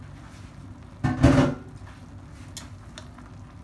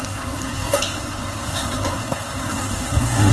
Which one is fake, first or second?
second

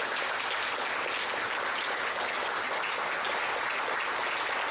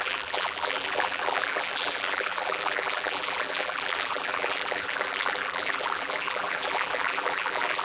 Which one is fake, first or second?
second